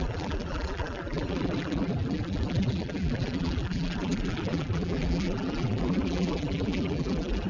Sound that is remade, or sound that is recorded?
remade